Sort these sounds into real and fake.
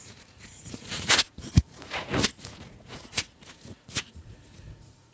fake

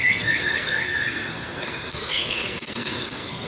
fake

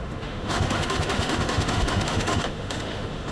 fake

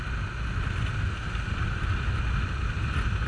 real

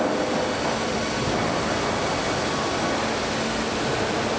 real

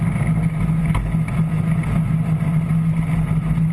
real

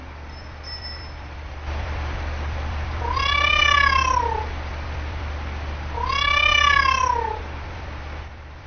fake